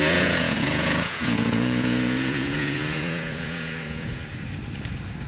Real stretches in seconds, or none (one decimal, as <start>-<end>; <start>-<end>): 4.2-5.3